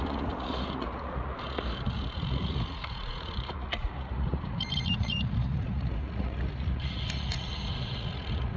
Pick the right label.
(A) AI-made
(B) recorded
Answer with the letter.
A